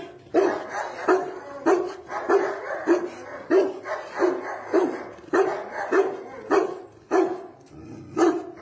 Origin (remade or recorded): recorded